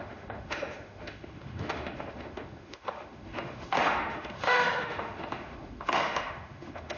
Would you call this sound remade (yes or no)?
yes